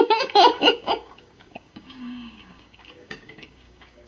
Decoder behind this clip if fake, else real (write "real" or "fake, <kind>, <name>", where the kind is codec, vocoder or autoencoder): fake, codec, DAC